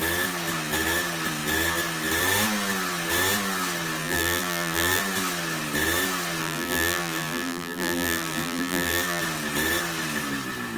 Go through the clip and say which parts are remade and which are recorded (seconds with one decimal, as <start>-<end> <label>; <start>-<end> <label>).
0.0-4.0 recorded; 4.0-5.0 remade; 5.0-6.4 recorded; 6.4-9.2 remade; 9.2-10.8 recorded